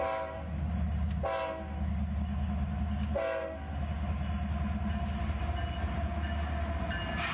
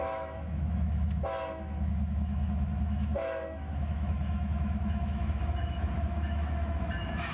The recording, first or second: first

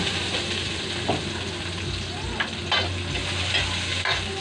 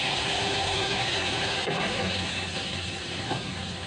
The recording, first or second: first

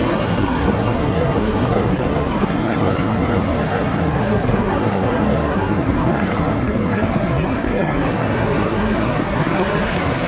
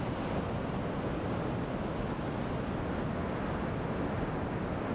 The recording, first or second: second